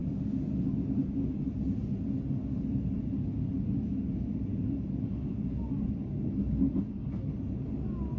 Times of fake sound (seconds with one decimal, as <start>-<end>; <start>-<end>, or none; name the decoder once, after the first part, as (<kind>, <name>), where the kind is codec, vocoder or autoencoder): none

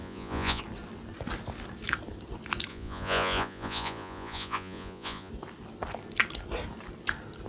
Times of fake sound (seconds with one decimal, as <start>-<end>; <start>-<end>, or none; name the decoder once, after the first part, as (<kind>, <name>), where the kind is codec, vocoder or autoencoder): 0.0-0.6 (vocoder, Vocos); 2.7-5.3

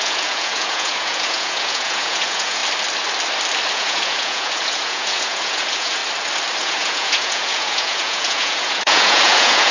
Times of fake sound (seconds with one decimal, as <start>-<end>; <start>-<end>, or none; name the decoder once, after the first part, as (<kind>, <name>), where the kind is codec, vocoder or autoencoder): 0.0-2.6 (vocoder, Vocos); 3.7-6.0; 6.6-9.7

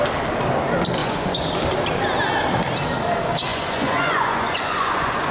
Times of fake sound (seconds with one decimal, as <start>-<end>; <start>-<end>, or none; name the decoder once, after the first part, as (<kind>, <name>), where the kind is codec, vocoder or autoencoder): 1.0-1.5 (vocoder, Vocos); 3.5-5.3

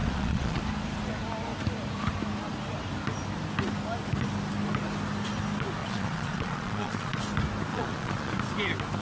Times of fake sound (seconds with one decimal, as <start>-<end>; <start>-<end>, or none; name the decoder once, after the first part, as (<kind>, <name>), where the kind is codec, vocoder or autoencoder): 0.0-0.6 (vocoder, Vocos); 5.8-7.2; 7.7-8.3

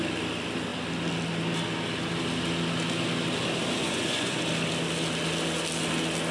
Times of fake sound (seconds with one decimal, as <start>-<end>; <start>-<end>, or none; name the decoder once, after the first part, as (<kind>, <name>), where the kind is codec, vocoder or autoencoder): 3.8-4.4 (vocoder, Vocos)

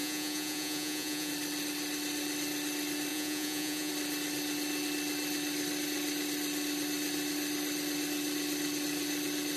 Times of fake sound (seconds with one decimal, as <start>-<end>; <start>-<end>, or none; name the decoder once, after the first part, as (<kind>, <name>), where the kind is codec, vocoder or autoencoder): 0.0-1.3 (vocoder, Vocos); 3.1-3.9